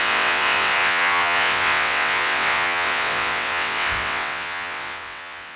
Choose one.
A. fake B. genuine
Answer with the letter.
A